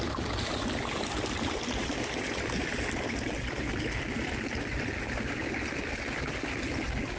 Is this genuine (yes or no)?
yes